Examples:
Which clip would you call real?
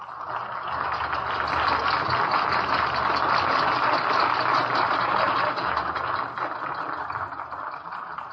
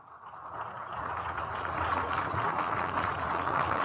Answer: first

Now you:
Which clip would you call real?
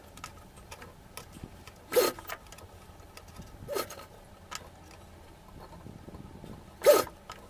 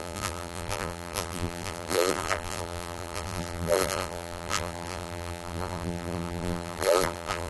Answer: first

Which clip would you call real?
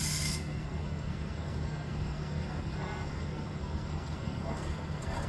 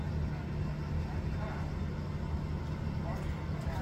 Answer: second